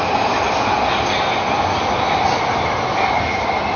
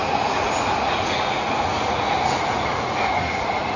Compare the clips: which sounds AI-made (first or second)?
second